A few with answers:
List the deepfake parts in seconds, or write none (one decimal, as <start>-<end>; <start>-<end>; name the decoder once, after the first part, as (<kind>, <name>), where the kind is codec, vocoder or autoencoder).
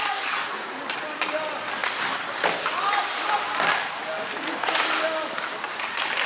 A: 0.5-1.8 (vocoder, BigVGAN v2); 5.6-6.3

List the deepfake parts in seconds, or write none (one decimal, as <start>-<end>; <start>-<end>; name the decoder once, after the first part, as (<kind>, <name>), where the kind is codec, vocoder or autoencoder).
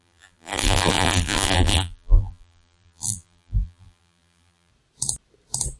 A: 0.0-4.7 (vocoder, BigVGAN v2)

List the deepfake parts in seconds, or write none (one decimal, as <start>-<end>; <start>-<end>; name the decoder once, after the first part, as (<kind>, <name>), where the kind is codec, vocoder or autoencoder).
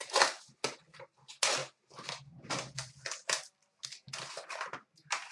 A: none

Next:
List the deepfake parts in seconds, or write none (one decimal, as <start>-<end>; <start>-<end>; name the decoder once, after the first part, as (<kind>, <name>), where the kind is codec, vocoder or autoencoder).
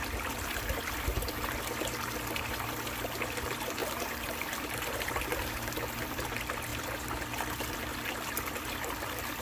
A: 3.8-5.7 (vocoder, BigVGAN v2)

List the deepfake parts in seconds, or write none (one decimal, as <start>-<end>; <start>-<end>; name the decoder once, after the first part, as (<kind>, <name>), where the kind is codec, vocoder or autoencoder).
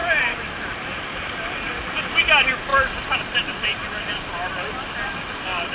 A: none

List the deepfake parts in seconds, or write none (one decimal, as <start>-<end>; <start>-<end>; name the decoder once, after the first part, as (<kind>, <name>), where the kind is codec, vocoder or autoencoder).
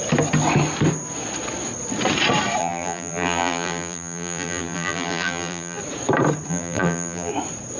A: 2.6-5.8 (vocoder, BigVGAN v2); 6.5-7.3